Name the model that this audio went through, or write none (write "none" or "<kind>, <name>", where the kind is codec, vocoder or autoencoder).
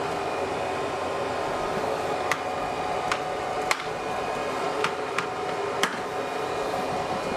none